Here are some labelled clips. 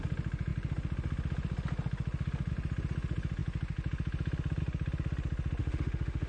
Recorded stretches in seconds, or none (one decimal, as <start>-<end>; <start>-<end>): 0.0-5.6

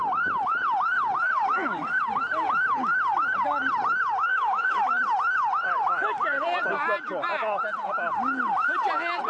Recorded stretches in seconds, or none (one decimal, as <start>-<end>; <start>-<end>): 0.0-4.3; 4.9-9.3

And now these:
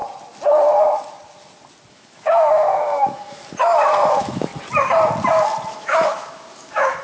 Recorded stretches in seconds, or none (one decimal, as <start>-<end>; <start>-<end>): 0.0-1.9; 3.4-4.1; 4.5-5.7